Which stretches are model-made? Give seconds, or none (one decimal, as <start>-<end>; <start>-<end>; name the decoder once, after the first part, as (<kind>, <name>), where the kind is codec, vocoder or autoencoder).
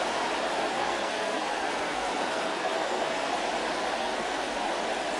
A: 0.7-3.3 (codec, SNAC); 4.0-4.7